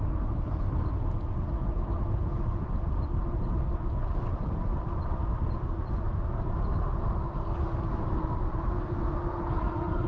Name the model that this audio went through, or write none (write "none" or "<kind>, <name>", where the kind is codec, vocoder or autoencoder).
none